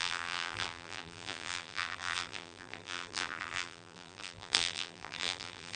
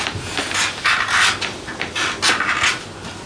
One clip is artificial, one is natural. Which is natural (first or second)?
second